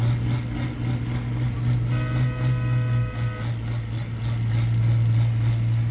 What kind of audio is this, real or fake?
real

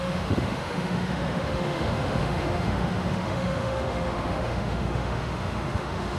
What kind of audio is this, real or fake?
fake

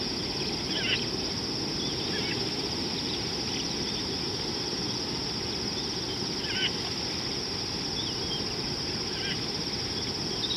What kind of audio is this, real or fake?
real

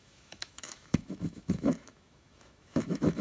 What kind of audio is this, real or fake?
fake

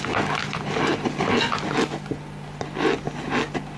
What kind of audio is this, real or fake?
real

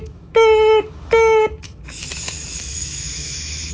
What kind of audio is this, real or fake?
fake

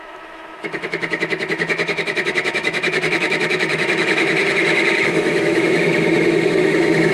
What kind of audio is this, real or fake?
fake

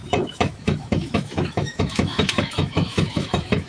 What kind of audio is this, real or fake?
fake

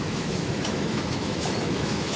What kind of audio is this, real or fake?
fake